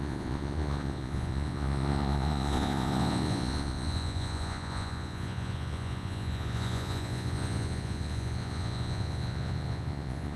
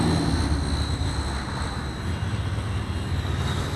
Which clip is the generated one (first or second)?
first